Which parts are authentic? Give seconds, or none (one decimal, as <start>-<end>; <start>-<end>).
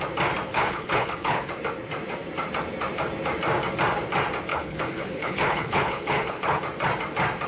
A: 0.0-0.5; 1.5-4.5; 6.6-7.5